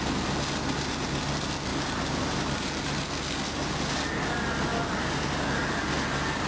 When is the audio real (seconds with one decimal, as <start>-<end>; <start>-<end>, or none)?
0.0-1.7; 2.8-6.5